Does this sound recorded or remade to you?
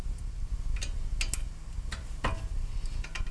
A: recorded